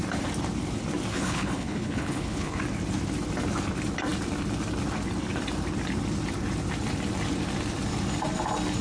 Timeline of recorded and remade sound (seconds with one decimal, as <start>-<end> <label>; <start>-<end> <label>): 0.0-1.1 recorded; 1.1-2.6 remade; 2.6-8.8 recorded